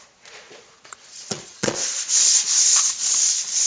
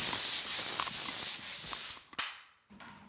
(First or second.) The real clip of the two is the second